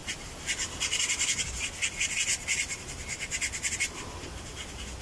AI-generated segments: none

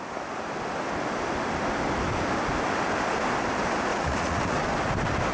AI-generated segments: 3.9-4.6 (vocoder, Vocos)